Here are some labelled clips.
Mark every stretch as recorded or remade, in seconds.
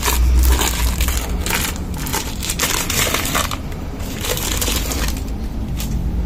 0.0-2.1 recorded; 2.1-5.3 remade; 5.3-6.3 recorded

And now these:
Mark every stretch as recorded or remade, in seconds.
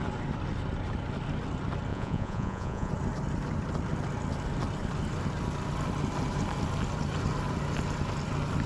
0.0-1.9 recorded; 1.9-2.9 remade; 2.9-8.7 recorded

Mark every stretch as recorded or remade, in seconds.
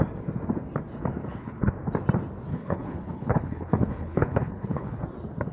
0.0-1.2 recorded; 1.2-1.7 remade; 1.7-2.5 recorded; 2.5-5.0 remade; 5.0-5.5 recorded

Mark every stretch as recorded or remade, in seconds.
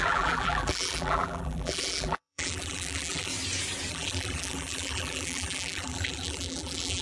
0.0-3.3 remade; 3.3-3.9 recorded; 3.9-7.0 remade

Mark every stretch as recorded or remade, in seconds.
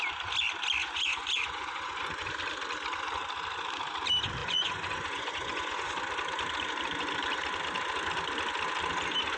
0.0-0.8 recorded; 0.8-2.3 remade; 2.3-4.4 recorded; 4.4-5.9 remade; 5.9-9.4 recorded